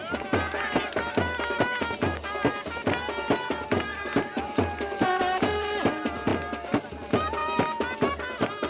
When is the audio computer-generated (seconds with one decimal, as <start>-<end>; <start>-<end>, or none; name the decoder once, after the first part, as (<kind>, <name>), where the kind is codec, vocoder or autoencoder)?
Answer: none